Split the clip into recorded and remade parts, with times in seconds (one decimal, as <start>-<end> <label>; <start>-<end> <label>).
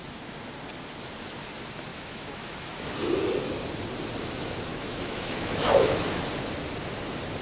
0.0-1.9 recorded; 1.9-2.9 remade; 2.9-4.7 recorded; 4.7-6.2 remade; 6.2-7.4 recorded